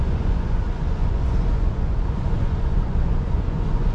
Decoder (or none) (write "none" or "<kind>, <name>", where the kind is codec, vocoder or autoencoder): vocoder, Vocos